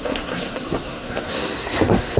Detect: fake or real fake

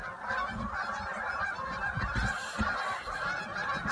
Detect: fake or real real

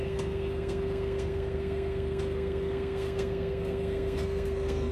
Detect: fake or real fake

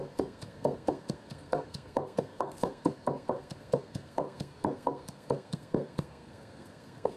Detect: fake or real fake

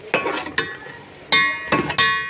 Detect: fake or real real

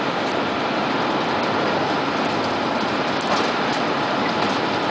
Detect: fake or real real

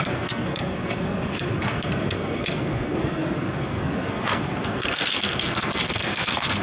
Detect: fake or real fake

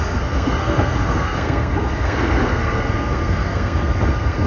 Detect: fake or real fake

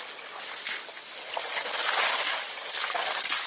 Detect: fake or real real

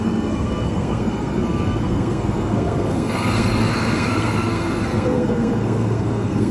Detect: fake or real fake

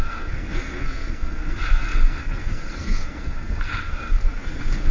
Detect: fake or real fake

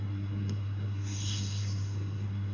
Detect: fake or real fake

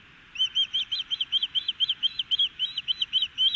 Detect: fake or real real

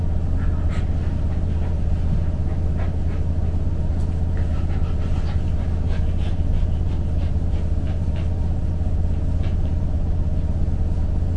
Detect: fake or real real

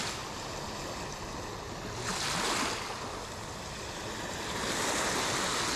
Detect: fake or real real